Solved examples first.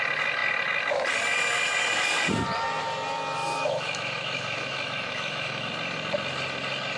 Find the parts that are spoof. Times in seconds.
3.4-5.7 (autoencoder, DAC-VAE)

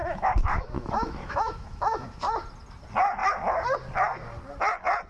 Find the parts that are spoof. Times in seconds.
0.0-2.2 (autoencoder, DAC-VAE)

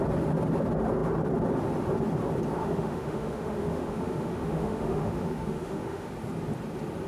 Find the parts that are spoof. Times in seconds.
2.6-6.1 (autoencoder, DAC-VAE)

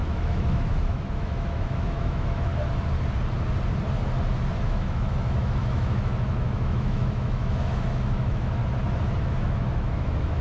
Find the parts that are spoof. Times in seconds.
0.0-2.5 (autoencoder, DAC-VAE); 4.6-8.6; 9.2-10.4

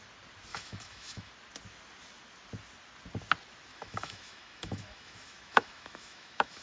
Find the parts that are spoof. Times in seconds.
0.5-1.3 (autoencoder, DAC-VAE); 3.7-6.6

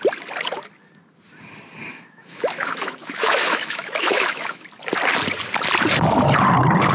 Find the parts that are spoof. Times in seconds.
1.9-4.6 (autoencoder, DAC-VAE)

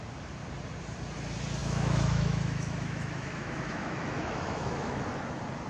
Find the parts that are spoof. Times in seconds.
1.6-5.0 (autoencoder, DAC-VAE)

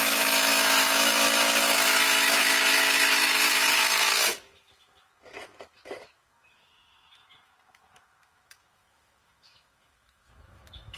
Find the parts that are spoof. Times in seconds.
0.0-11.0 (autoencoder, DAC-VAE)